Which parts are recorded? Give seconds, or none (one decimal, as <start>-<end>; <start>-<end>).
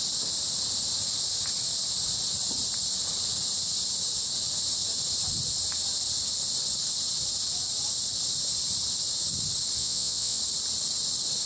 0.0-9.8; 10.4-11.5